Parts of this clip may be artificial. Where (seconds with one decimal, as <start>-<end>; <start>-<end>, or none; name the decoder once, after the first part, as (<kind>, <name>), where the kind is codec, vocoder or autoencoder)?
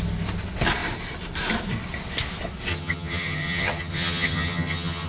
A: 2.7-5.1 (vocoder, HiFi-GAN)